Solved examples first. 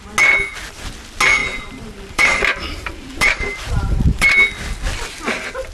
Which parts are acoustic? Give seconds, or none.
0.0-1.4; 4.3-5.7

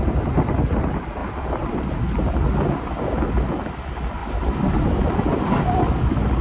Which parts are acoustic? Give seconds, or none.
0.0-6.4

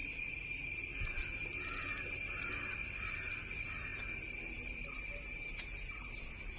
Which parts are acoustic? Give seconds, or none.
2.5-3.9

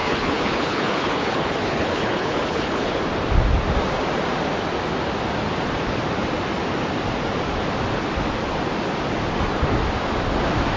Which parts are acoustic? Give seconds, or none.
3.0-10.8

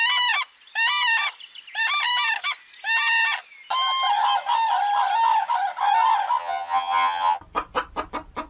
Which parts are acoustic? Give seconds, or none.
0.0-6.4; 7.4-8.5